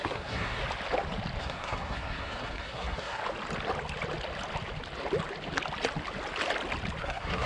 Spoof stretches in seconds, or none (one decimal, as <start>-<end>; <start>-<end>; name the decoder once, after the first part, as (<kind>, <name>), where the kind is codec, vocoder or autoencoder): 0.0-0.6 (codec, SNAC); 1.4-3.2; 7.0-7.5